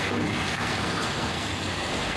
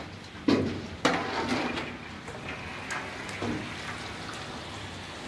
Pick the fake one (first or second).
first